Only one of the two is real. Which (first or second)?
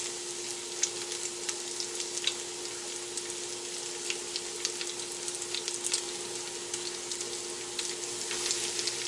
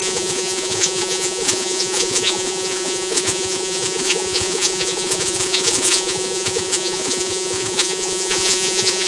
first